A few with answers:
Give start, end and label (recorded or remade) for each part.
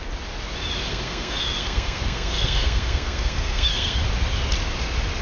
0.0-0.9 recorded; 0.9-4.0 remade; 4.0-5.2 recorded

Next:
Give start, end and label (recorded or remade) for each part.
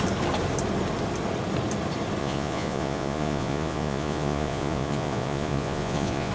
0.0-2.2 recorded; 2.2-6.3 remade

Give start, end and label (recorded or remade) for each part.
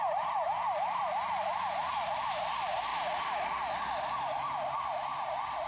0.0-5.7 recorded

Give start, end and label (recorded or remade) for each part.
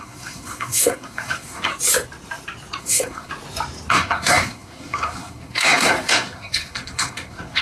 0.0-1.7 remade; 1.7-2.8 recorded; 2.8-3.3 remade; 3.3-3.9 recorded; 3.9-7.6 remade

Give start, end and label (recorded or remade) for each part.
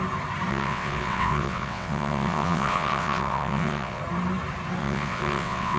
0.0-0.5 recorded; 0.5-4.0 remade; 4.0-4.8 recorded; 4.8-5.8 remade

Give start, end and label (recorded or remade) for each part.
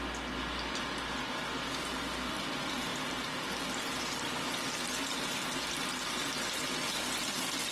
0.0-7.7 recorded